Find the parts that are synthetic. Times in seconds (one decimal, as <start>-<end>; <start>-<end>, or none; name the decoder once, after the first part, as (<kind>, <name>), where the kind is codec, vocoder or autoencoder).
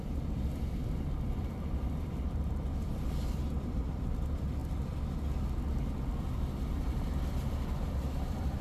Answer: 0.0-4.6 (vocoder, BigVGAN v2); 6.7-8.6